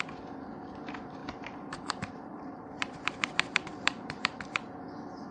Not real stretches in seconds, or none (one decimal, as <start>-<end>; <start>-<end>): 1.2-4.4